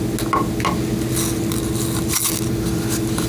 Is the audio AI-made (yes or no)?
no